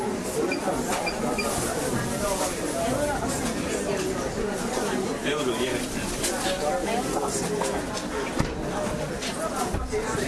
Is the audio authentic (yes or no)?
yes